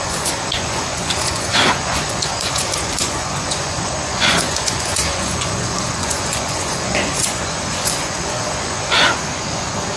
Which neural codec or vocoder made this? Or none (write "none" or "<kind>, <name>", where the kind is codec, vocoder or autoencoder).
vocoder, Vocos